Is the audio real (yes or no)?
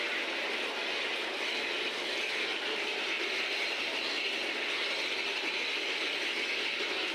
yes